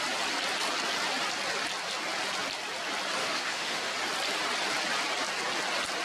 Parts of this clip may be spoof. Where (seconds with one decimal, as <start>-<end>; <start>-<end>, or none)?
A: 3.2-3.9